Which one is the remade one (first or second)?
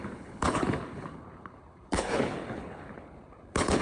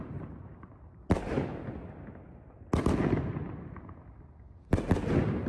first